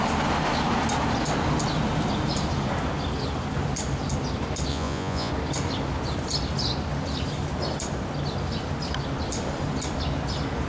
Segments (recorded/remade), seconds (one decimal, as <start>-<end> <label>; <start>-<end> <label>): 0.0-4.7 recorded; 4.7-5.3 remade; 5.3-10.7 recorded